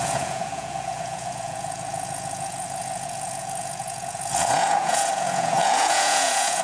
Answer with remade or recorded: remade